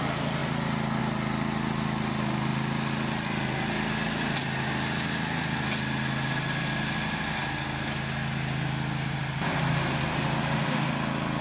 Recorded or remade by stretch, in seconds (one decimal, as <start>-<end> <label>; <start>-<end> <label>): 0.0-2.5 recorded; 2.5-3.7 remade; 3.7-11.4 recorded